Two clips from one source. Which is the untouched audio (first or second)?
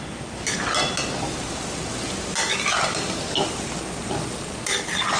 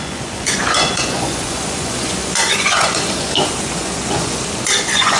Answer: first